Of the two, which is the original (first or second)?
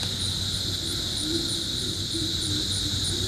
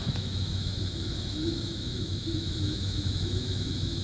first